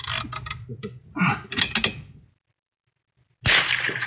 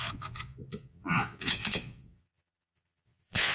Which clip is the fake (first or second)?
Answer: second